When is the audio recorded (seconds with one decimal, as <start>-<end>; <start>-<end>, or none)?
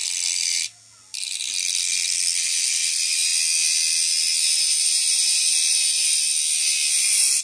0.0-7.4